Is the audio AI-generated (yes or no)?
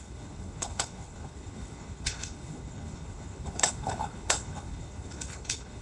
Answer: yes